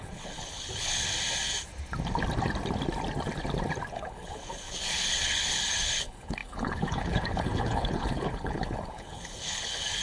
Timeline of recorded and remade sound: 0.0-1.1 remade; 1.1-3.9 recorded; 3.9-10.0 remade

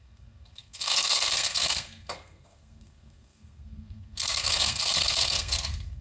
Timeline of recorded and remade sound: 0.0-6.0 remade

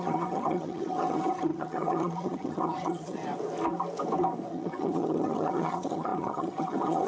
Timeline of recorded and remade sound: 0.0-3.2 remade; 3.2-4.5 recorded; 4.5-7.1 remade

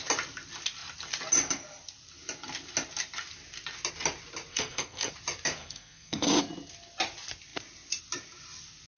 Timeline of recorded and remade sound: 0.0-4.5 recorded; 4.5-5.1 remade; 5.1-5.6 recorded; 5.6-6.4 remade; 6.4-9.0 recorded

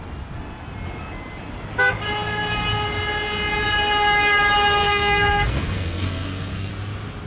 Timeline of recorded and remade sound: 0.0-4.8 recorded; 4.8-6.7 remade; 6.7-7.3 recorded